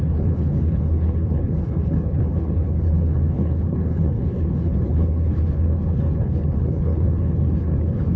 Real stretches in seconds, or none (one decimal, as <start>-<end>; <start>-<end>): none

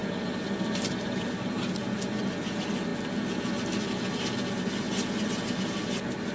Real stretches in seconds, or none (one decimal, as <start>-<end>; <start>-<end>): 0.0-6.3

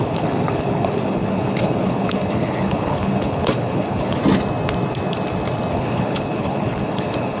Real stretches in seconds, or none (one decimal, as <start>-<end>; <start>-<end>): 4.2-5.7

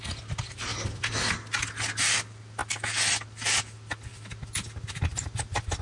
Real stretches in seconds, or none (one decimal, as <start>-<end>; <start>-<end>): 0.0-5.8

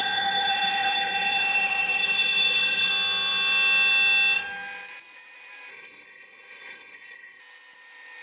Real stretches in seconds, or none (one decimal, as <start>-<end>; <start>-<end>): 2.9-5.7; 7.4-8.2